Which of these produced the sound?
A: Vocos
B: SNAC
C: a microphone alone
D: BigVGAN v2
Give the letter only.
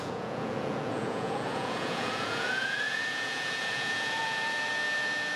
A